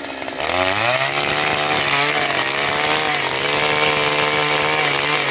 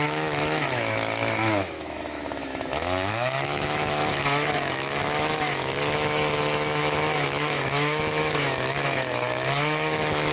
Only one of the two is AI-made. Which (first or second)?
second